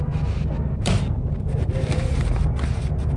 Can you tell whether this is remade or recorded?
recorded